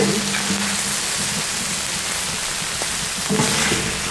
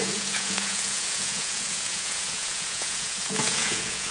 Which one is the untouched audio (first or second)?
first